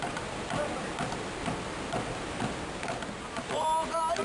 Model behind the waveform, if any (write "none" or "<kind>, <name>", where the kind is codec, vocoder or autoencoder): none